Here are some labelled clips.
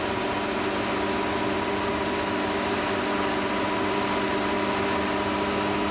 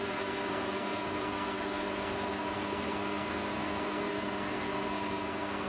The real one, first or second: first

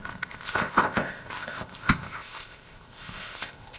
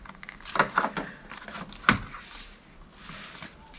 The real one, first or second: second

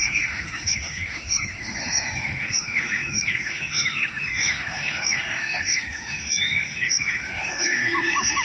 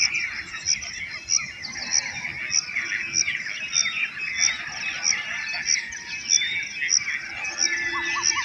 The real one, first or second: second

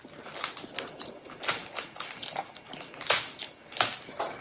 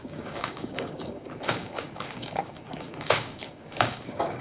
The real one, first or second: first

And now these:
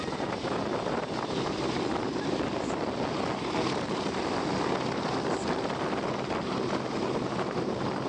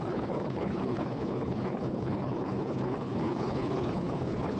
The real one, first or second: first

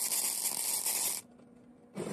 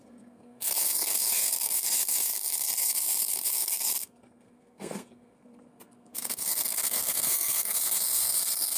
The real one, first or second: first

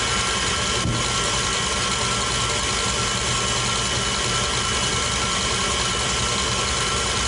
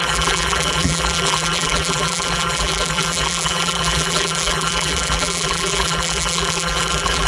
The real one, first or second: first